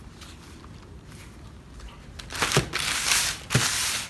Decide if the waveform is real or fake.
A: real